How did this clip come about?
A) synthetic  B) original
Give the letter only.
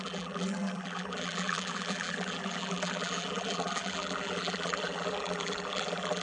A